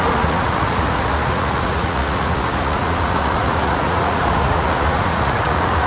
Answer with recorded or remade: remade